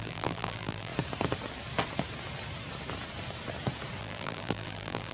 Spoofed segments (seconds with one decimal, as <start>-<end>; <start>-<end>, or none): 0.0-0.9; 4.0-5.1